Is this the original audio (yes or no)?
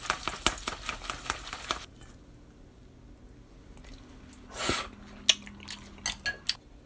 yes